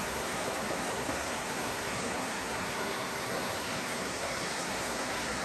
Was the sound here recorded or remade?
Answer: remade